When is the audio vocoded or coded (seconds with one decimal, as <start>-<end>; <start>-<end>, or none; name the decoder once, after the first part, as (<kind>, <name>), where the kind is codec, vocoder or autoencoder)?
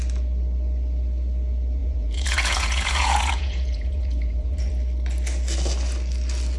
1.8-4.7 (vocoder, Vocos)